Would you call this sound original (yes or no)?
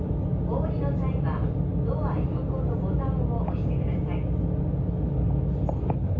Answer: yes